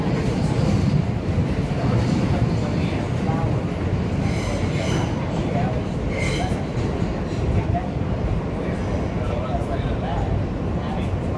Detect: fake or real real